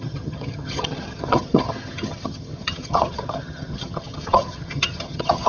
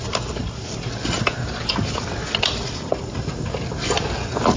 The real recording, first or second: second